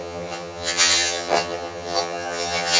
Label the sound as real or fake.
fake